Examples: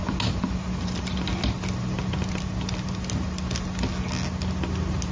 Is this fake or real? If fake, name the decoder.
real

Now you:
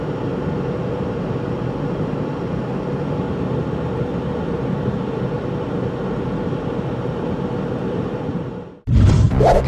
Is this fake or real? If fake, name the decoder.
real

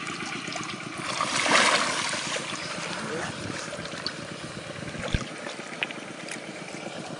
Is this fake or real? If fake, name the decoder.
real